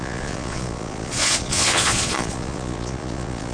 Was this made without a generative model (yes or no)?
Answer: no